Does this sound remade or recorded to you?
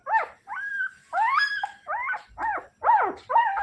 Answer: recorded